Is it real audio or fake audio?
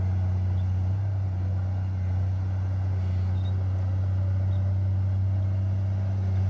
real